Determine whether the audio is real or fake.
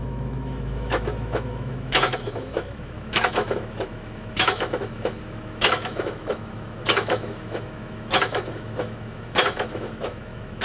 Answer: fake